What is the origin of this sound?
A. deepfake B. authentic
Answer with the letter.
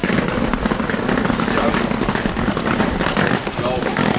B